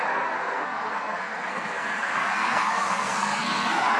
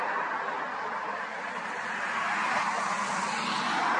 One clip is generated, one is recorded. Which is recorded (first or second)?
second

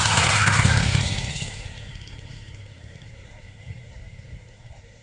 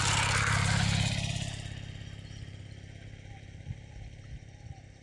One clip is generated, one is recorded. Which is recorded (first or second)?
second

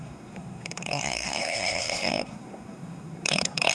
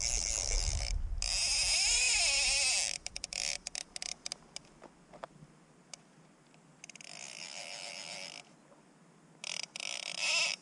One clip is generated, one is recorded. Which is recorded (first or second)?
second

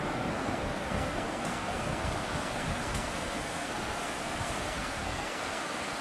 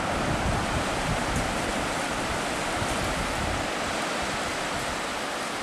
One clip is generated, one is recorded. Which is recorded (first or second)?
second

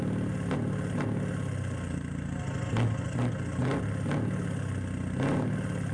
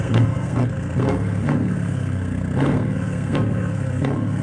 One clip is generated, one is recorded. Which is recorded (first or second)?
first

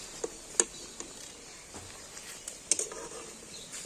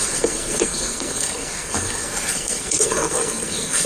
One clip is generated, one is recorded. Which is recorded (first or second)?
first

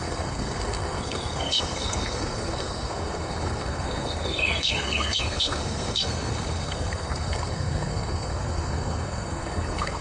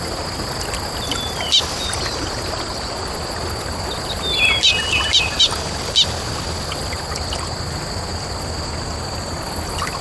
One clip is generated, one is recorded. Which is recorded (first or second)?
second